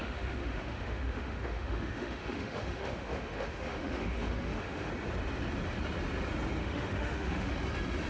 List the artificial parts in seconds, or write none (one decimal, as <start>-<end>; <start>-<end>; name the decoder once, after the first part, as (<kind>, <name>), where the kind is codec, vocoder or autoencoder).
0.0-4.9 (autoencoder, DAC-VAE); 6.6-7.5